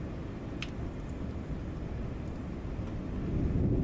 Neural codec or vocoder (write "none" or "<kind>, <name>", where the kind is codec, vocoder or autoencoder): none